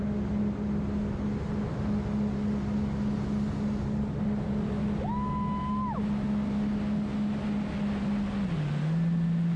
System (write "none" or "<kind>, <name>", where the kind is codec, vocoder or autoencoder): none